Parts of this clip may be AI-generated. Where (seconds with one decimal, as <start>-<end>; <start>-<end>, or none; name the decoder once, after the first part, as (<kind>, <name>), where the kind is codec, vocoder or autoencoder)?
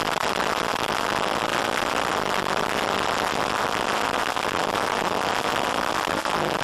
none